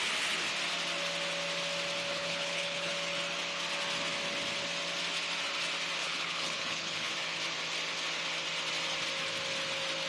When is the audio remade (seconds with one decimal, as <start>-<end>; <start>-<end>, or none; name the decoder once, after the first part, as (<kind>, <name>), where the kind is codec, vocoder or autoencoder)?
2.1-2.9 (codec, HILCodec); 6.0-7.1